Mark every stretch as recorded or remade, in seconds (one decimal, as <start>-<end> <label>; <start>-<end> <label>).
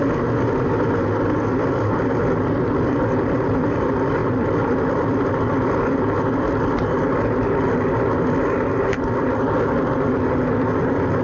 0.0-4.2 recorded; 4.2-6.2 remade; 6.2-11.2 recorded